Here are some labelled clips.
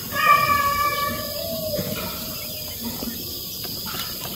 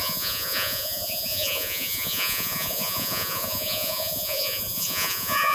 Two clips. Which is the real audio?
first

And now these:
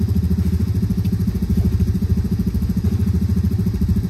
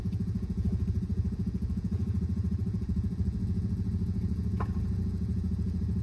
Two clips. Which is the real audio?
first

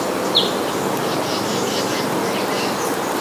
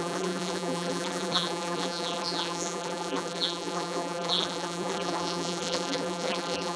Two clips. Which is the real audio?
first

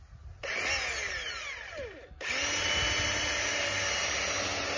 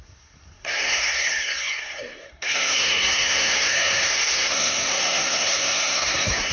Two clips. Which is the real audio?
first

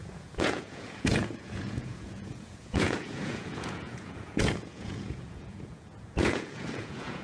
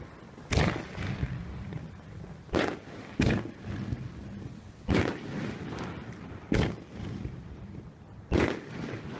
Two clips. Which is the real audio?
second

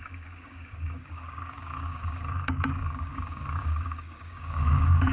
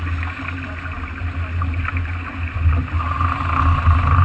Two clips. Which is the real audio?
second